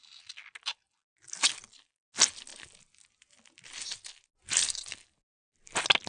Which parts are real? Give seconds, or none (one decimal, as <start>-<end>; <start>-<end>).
0.0-6.1